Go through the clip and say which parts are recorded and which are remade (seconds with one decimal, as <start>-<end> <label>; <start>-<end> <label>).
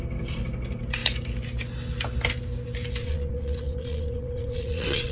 0.0-3.0 recorded; 3.0-5.1 remade